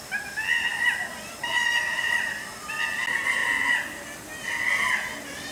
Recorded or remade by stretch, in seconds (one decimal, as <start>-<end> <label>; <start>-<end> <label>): 0.0-0.7 recorded; 0.7-1.4 remade; 1.4-1.9 recorded; 1.9-3.0 remade; 3.0-5.5 recorded